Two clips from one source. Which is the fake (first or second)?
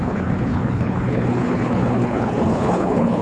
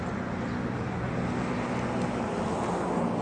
first